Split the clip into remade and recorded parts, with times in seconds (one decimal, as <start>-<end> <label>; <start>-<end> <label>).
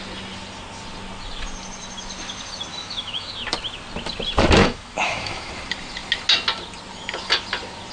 0.0-2.7 recorded; 2.7-3.3 remade; 3.3-4.6 recorded; 4.6-5.5 remade; 5.5-7.9 recorded